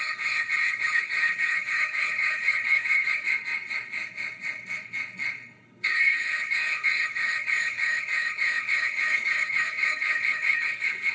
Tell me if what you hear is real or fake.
fake